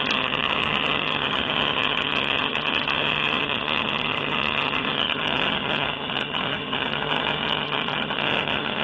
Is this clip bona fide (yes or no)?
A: no